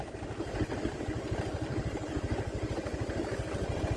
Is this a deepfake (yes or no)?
yes